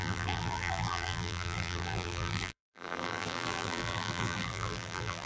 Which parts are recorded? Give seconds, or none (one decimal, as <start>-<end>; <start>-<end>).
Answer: none